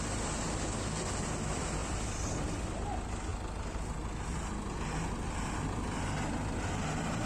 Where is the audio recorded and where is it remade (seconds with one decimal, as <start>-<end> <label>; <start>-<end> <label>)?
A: 0.0-7.3 recorded